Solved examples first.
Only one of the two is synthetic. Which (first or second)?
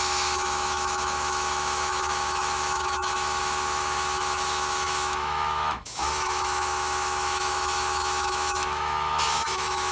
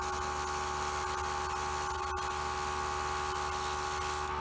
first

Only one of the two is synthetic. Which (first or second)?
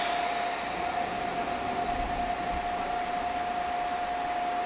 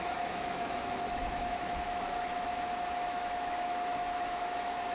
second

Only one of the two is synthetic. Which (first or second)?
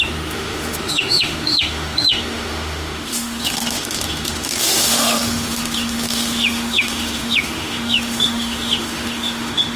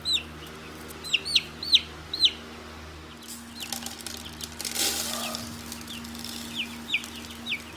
first